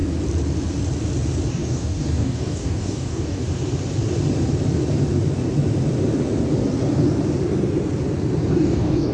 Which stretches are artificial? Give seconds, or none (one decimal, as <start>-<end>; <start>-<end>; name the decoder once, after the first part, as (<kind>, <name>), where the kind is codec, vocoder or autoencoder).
1.5-3.4 (codec, DAC); 8.5-9.1